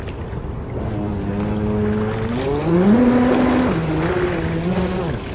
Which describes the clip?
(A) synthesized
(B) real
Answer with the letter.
B